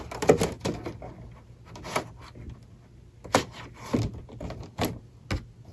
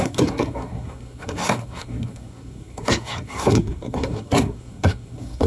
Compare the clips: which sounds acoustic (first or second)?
first